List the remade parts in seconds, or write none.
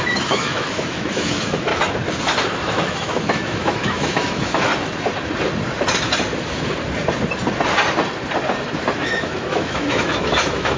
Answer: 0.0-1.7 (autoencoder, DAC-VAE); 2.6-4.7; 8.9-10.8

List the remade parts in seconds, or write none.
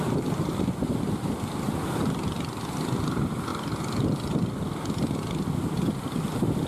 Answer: 0.0-6.7 (vocoder, BigVGAN v2)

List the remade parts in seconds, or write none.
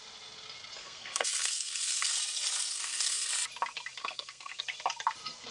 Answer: 0.8-2.2 (codec, SNAC); 2.7-3.3; 4.0-4.6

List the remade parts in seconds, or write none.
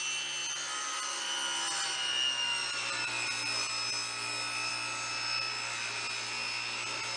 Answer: none